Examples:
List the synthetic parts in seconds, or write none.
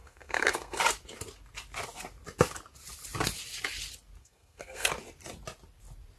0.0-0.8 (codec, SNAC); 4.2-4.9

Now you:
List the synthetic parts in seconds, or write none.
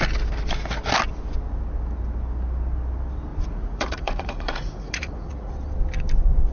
3.3-5.5 (vocoder, Vocos)